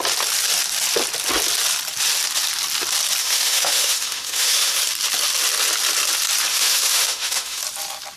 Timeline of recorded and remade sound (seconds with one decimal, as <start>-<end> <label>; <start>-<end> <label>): 0.0-3.2 recorded; 3.2-4.8 remade; 4.8-6.5 recorded; 6.5-7.6 remade; 7.6-8.2 recorded